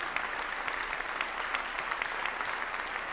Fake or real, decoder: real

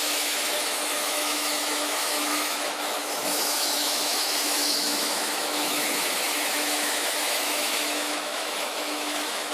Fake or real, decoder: fake, autoencoder, DAC-VAE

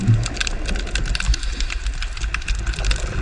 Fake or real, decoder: real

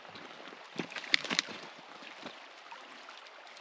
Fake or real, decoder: real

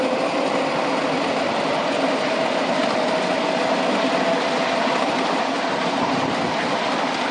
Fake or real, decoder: real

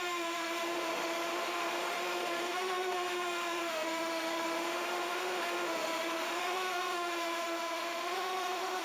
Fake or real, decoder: fake, autoencoder, DAC-VAE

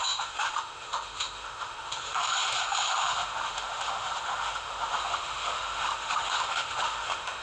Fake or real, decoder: fake, autoencoder, DAC-VAE